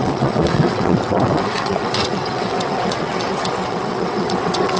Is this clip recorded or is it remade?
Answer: remade